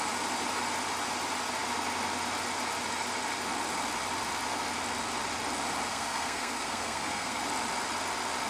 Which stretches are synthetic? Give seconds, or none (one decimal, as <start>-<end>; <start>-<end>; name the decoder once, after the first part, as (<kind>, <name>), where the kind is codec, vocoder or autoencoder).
5.9-7.4 (codec, SNAC)